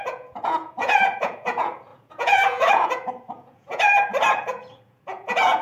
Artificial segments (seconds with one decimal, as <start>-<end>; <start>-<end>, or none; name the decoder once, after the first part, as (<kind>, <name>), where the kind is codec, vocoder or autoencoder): 0.0-5.6 (vocoder, Vocos)